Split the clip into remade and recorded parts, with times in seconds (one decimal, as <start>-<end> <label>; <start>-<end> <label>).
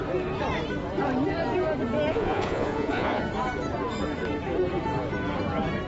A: 0.0-2.1 recorded; 2.1-3.2 remade; 3.2-5.9 recorded